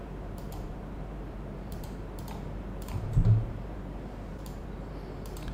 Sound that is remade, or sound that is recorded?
remade